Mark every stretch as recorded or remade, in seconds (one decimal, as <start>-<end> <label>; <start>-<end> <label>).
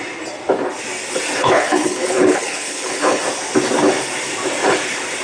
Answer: 0.0-1.4 recorded; 1.4-3.2 remade; 3.2-5.2 recorded